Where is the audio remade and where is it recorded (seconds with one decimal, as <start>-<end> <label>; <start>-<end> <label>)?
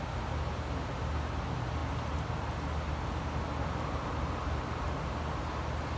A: 0.0-6.0 recorded